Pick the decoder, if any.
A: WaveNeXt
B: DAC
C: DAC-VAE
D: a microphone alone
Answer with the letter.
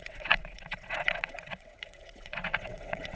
A